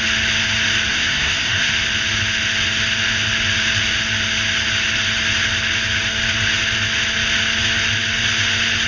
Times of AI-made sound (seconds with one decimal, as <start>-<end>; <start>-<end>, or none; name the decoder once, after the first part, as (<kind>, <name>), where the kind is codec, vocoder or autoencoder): 0.9-1.7 (codec, SNAC)